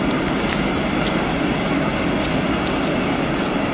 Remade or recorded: recorded